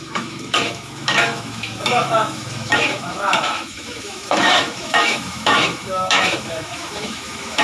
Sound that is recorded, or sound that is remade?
remade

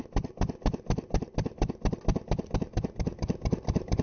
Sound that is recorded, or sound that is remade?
recorded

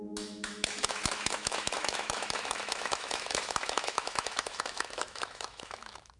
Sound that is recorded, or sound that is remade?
remade